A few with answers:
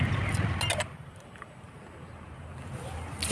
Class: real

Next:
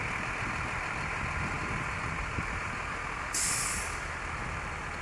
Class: real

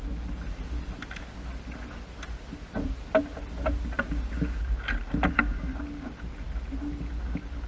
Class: real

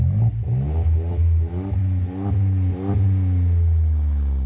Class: real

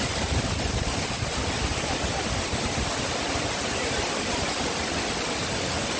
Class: real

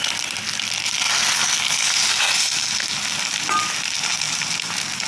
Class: real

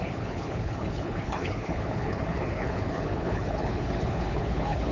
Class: fake